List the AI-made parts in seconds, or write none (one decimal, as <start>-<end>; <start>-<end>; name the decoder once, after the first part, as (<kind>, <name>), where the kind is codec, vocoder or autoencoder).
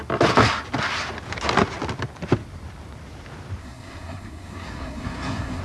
3.6-5.6 (codec, SNAC)